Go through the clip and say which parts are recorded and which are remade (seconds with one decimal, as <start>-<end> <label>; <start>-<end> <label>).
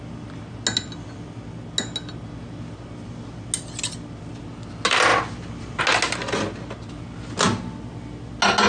0.0-5.1 recorded; 5.1-5.8 remade; 5.8-8.7 recorded